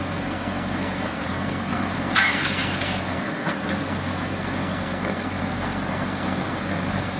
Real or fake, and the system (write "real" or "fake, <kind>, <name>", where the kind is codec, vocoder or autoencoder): fake, codec, SNAC